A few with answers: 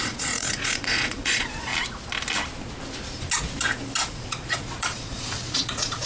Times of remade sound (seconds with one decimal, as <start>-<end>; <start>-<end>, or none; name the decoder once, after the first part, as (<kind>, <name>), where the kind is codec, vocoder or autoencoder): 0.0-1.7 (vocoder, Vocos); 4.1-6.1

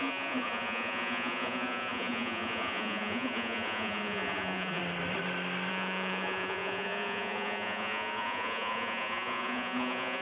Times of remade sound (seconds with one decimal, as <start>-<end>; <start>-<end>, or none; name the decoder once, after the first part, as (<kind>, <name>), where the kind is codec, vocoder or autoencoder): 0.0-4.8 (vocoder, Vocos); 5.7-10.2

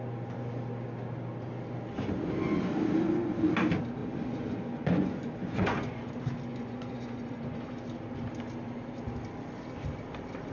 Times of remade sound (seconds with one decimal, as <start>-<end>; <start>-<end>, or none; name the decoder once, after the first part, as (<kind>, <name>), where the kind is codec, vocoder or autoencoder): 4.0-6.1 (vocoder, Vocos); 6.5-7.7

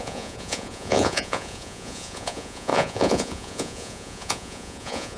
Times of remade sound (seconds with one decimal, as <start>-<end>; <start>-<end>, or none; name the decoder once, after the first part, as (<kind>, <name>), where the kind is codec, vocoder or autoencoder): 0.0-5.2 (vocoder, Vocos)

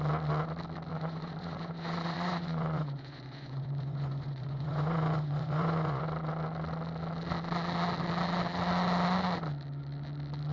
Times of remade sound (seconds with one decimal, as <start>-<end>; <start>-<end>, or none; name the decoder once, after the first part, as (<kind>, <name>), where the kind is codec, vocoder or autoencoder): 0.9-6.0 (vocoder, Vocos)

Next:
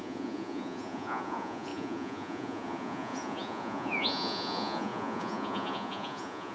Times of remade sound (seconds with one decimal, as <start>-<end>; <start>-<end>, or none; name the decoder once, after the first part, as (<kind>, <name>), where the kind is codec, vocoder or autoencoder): 0.0-6.5 (vocoder, Vocos)

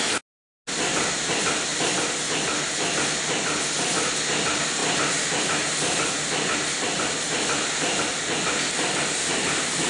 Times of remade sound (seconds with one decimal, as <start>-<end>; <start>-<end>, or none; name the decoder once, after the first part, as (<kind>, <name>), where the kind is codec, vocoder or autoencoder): none

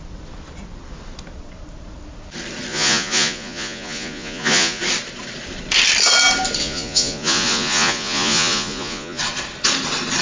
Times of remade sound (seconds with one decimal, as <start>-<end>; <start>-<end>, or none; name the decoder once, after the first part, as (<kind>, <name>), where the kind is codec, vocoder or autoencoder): 2.7-4.8 (vocoder, Vocos); 6.6-9.2